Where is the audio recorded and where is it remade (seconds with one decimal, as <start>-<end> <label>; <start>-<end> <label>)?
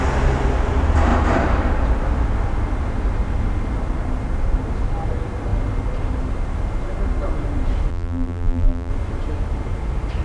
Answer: 0.0-7.9 recorded; 7.9-8.9 remade; 8.9-10.2 recorded